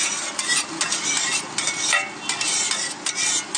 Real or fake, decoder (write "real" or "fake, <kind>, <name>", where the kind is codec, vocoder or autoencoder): real